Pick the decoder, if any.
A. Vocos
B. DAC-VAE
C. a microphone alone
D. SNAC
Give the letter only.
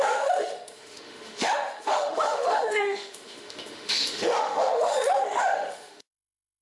B